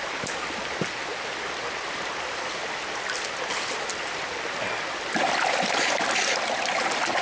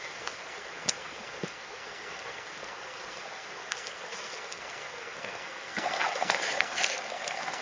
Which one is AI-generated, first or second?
second